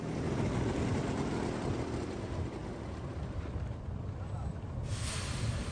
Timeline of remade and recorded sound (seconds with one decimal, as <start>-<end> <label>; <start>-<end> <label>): 0.0-5.7 recorded